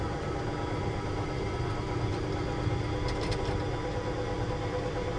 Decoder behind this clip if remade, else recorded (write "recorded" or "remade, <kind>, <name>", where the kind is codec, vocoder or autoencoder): recorded